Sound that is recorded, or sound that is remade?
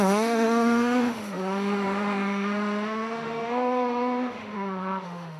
remade